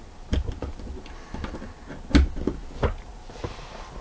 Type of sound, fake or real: real